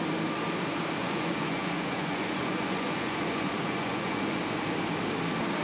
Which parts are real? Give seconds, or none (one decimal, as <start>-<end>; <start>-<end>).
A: 0.0-1.0; 4.4-5.6